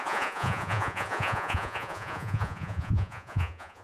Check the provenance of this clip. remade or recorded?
remade